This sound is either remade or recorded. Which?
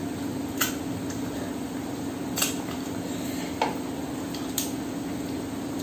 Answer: recorded